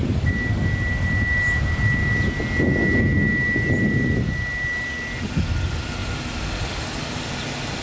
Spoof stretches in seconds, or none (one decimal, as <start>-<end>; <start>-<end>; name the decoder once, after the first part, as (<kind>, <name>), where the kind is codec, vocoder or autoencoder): none